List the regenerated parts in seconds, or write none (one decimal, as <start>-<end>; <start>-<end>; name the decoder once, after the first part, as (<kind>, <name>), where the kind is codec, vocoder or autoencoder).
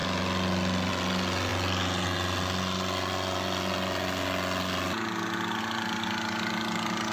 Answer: none